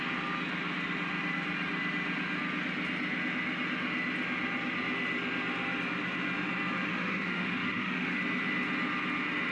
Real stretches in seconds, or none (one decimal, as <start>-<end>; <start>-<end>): 0.0-6.9; 8.2-9.5